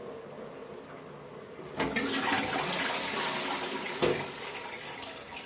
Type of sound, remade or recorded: recorded